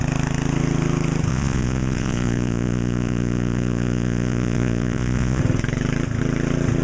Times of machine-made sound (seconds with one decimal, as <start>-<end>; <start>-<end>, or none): 1.3-5.4